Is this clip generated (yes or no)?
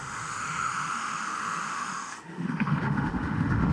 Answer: yes